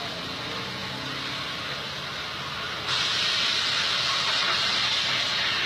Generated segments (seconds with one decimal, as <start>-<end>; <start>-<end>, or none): none